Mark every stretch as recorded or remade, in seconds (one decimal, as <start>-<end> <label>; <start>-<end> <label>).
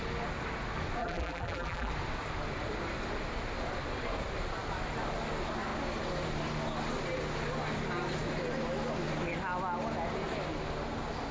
0.0-1.0 recorded; 1.0-1.9 remade; 1.9-11.3 recorded